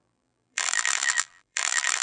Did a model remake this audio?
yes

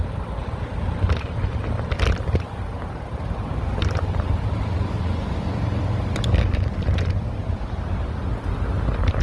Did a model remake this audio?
no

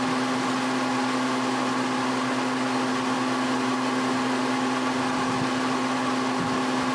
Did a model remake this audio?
no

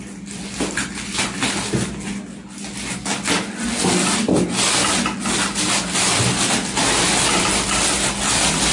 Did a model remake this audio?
no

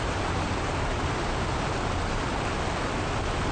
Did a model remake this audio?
no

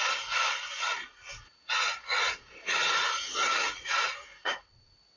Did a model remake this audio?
yes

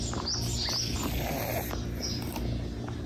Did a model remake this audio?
no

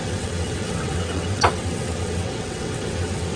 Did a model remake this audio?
yes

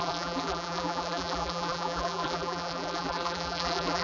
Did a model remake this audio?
yes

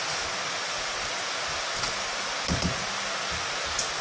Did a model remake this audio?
no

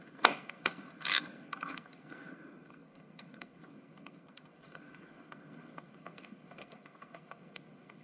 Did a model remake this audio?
yes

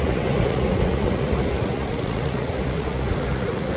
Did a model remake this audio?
yes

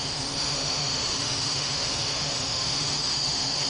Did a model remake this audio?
yes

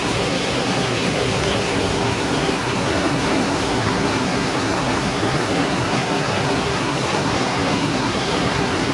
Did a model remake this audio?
yes